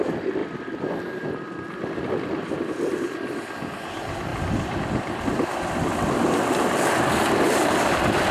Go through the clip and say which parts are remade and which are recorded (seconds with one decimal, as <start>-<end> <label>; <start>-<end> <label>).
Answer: 0.0-0.4 recorded; 0.4-2.1 remade; 2.1-4.3 recorded; 4.3-5.2 remade; 5.2-8.3 recorded